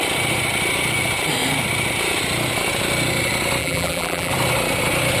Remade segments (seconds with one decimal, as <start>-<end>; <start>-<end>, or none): 3.6-4.3